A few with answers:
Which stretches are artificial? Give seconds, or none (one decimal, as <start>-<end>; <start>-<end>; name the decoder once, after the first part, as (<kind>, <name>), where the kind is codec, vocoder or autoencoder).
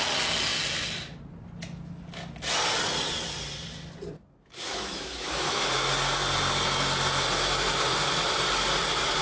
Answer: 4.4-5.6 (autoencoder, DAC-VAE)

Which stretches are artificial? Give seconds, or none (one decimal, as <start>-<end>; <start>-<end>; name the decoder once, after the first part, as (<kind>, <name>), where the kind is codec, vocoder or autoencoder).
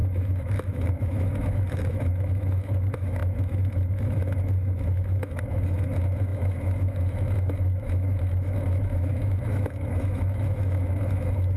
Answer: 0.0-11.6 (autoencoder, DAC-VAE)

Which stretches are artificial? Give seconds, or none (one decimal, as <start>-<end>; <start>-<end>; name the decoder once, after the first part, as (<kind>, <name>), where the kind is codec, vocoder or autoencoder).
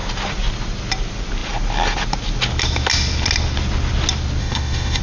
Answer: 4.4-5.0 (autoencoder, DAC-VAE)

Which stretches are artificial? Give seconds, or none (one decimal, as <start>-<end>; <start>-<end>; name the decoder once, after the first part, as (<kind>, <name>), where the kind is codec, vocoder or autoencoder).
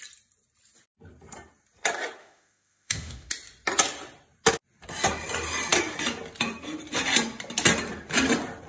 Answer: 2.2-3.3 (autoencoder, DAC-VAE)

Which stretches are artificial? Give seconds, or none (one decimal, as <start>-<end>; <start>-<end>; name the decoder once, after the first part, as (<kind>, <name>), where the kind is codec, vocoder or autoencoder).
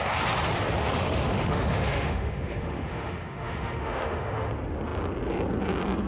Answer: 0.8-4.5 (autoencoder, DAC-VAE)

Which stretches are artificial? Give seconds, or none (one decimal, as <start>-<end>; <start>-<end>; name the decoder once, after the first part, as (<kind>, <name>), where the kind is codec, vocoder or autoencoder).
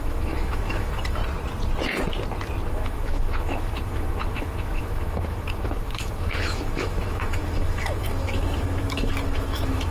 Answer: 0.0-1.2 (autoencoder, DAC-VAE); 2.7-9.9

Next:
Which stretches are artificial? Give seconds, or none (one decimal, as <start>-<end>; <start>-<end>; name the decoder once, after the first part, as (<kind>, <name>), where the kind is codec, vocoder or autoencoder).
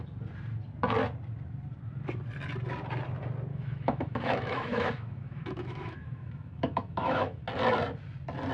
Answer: 3.5-7.4 (autoencoder, DAC-VAE)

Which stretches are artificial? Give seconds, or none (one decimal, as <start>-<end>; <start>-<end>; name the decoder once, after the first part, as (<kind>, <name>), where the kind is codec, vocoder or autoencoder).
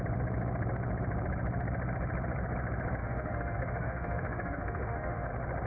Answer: 3.0-5.3 (autoencoder, DAC-VAE)